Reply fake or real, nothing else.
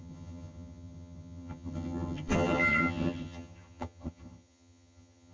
fake